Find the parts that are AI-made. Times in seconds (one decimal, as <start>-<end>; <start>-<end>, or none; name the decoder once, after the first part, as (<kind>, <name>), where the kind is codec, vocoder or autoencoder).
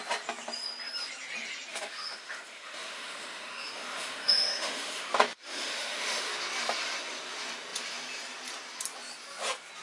1.7-5.1 (autoencoder, DAC-VAE); 5.5-6.3